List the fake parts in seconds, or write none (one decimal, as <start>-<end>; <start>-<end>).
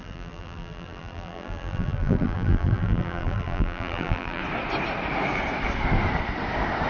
0.0-4.4